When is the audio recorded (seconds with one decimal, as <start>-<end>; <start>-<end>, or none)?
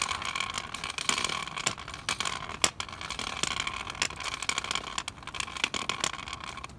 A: 0.0-6.8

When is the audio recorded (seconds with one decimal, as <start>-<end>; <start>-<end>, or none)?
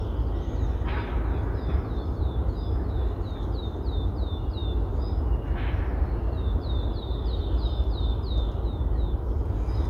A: 0.0-9.9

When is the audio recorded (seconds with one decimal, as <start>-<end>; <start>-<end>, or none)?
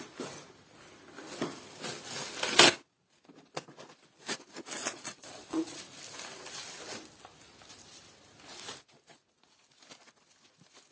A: 0.0-4.8; 5.8-10.9